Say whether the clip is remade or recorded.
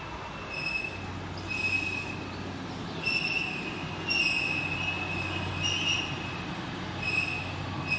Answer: recorded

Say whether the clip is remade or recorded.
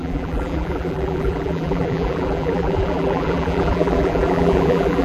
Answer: remade